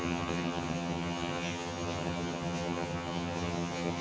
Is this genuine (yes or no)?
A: no